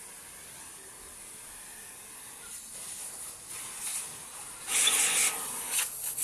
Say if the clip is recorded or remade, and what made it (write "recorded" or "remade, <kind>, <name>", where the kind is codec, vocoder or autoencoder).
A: recorded